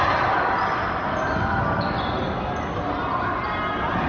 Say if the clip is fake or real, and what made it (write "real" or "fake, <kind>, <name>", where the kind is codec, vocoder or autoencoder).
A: real